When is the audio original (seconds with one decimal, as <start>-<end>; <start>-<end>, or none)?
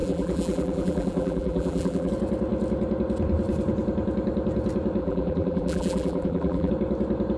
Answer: 2.1-5.0; 6.7-7.4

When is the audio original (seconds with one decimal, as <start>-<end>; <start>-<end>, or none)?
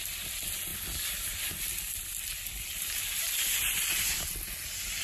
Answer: 0.0-5.0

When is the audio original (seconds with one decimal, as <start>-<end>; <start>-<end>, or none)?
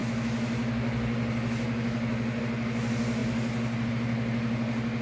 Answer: 0.0-5.0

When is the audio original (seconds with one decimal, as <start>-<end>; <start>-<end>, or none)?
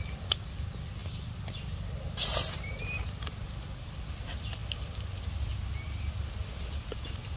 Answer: 1.0-2.2; 4.6-7.0